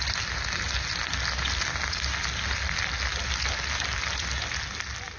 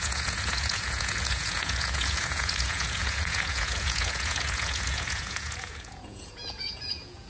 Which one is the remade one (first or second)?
second